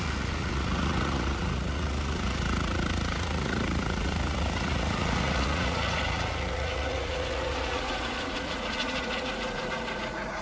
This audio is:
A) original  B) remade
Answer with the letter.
B